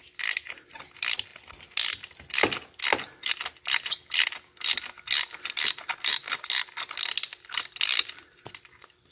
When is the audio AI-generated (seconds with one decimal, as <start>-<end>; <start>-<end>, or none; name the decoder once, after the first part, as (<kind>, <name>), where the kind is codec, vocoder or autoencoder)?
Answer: none